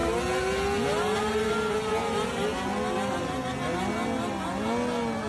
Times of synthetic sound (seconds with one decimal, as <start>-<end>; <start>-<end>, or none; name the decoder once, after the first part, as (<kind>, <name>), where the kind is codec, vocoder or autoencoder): none

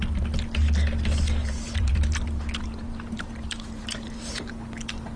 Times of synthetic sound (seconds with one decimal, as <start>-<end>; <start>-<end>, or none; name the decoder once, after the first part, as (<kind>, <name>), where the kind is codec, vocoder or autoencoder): 1.4-4.5 (vocoder, BigVGAN v2)

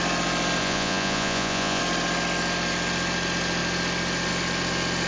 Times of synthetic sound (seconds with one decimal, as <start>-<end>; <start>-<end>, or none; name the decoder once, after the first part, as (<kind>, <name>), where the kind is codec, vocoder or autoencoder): 0.6-1.8 (vocoder, Vocos)

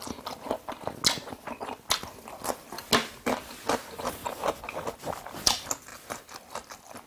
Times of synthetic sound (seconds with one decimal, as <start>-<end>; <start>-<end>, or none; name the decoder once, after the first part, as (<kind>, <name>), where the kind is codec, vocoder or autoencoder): none

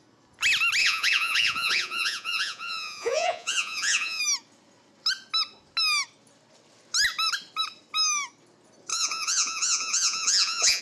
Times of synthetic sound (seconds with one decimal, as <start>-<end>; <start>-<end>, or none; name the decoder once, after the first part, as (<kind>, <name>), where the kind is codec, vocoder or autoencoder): 0.8-4.2 (vocoder, Vocos); 8.9-10.8

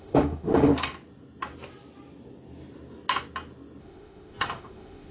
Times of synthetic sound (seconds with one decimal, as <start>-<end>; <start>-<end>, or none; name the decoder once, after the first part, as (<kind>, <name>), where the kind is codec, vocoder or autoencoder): 0.0-0.7 (autoencoder, DAC-VAE); 3.8-5.1